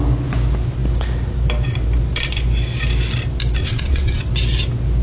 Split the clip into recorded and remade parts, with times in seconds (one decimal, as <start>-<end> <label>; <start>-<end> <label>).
0.0-3.6 recorded; 3.6-4.3 remade; 4.3-5.0 recorded